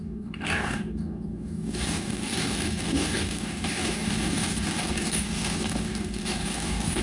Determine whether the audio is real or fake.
fake